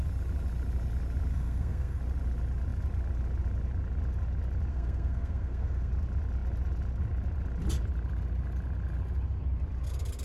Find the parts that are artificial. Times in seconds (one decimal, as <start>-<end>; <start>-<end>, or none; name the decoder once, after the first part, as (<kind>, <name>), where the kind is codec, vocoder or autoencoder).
1.3-2.0 (codec, SNAC); 4.7-5.9

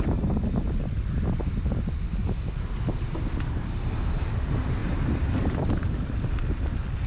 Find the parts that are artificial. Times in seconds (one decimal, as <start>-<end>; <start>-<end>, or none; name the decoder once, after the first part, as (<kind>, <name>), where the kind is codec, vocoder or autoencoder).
4.8-6.2 (vocoder, BigVGAN v2)

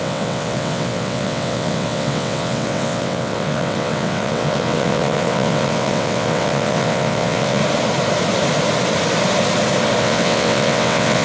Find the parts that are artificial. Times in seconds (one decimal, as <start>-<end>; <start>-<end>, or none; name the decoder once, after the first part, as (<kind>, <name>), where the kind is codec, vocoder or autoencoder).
0.0-7.6 (vocoder, WaveNeXt); 10.0-11.2